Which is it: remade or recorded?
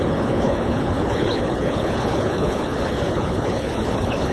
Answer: remade